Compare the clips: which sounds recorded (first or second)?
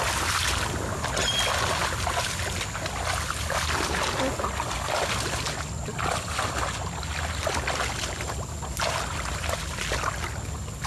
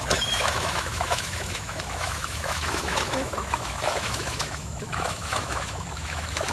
first